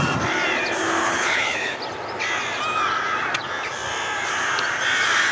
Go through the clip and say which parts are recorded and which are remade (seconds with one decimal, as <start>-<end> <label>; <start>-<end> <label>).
0.0-1.0 recorded; 1.0-1.8 remade; 1.8-5.3 recorded